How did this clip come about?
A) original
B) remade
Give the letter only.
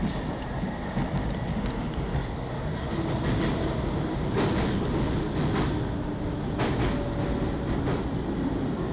A